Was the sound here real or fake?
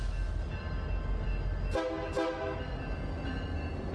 real